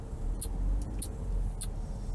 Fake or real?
real